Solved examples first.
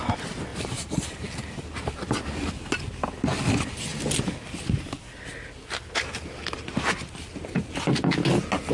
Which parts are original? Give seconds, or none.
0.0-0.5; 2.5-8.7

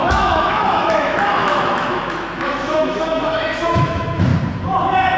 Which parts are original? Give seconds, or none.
4.3-5.2

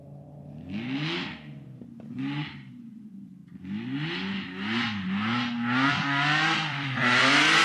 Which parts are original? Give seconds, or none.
0.0-2.7; 3.4-5.9